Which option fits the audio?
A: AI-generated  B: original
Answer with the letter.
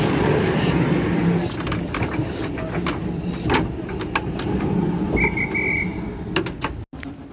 B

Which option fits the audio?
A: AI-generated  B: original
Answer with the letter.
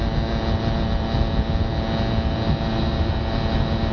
B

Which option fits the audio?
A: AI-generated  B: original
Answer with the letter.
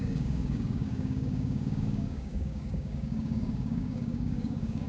A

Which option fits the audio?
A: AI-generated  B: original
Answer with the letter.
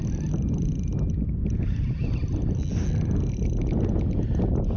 B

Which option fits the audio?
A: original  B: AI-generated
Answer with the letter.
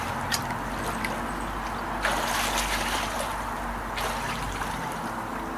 A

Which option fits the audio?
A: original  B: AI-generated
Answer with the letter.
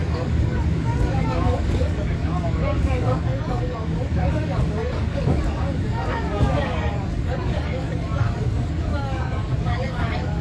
B